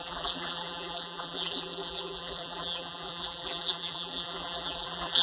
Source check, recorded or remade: remade